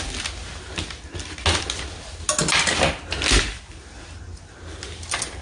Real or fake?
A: real